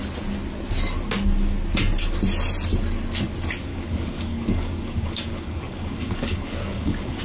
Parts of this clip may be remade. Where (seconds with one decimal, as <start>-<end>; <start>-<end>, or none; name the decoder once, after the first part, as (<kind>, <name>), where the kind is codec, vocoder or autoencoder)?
3.7-7.2 (codec, DAC)